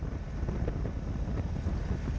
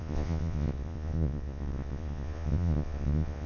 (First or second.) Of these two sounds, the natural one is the first